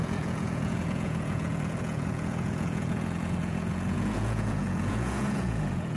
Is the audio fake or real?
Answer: fake